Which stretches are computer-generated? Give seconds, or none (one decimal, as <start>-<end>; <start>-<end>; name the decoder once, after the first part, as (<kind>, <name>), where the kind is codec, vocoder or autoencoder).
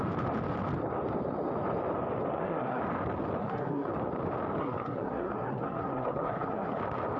2.3-2.8 (codec, SNAC); 3.4-3.9; 4.6-6.8